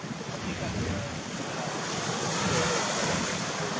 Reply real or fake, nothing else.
real